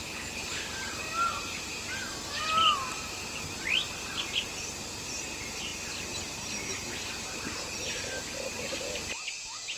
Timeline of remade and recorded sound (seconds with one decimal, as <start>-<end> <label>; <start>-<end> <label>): 0.0-9.8 recorded